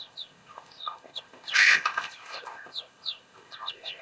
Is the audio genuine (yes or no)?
no